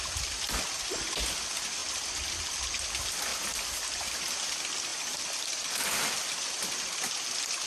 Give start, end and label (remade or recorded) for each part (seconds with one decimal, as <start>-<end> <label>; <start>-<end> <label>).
0.0-7.7 recorded